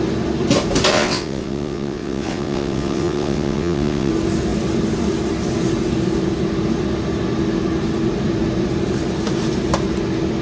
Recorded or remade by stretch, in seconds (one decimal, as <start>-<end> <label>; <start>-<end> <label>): 0.0-0.9 recorded; 0.9-4.1 remade; 4.1-10.4 recorded

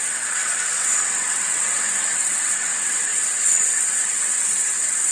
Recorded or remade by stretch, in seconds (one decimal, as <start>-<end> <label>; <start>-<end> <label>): 0.0-5.1 remade

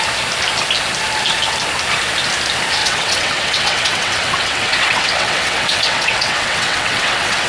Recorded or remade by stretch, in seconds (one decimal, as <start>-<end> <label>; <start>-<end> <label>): 0.0-2.8 recorded; 2.8-7.5 remade